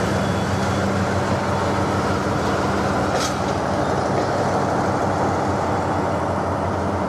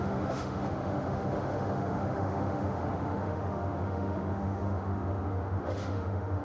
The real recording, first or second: first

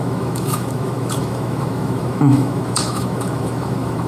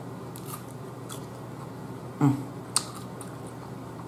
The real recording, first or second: second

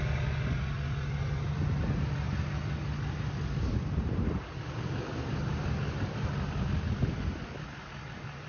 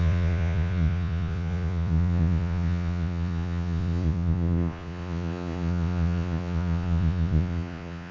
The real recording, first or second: first